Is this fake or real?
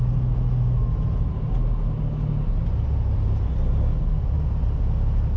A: real